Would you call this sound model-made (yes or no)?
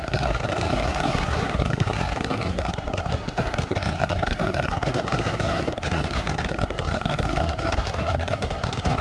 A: yes